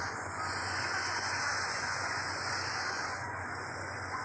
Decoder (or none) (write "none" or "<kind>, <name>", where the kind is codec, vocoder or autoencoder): vocoder, Vocos